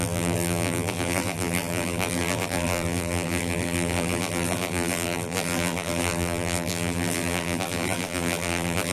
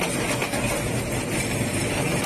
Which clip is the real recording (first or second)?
second